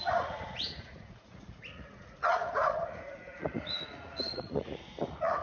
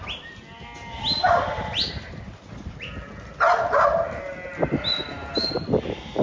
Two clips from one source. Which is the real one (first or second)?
second